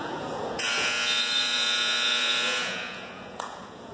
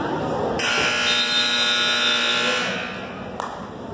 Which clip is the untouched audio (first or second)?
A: second